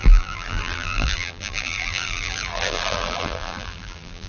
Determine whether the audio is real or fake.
fake